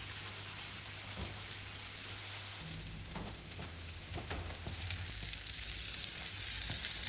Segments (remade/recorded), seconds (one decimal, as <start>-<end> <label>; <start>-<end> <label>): 0.0-2.2 recorded; 2.2-4.8 remade; 4.8-7.1 recorded